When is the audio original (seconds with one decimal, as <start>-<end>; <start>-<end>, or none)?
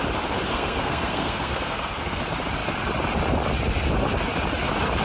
0.0-0.5; 2.2-5.0